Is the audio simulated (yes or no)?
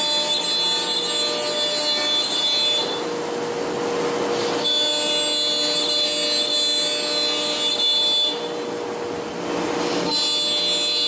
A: no